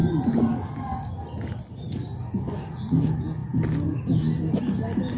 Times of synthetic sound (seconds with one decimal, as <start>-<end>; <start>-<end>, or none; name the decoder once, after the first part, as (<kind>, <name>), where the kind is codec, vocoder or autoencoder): none